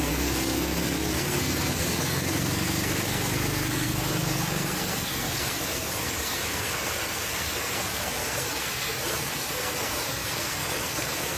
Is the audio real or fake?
fake